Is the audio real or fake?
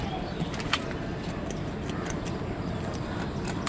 real